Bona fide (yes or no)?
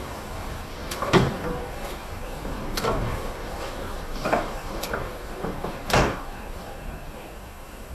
no